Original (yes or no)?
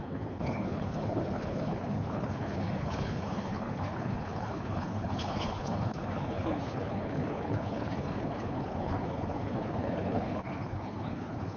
no